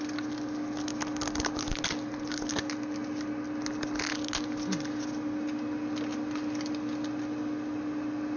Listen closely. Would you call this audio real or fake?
real